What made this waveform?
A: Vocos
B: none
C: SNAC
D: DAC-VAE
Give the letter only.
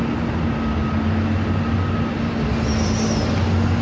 B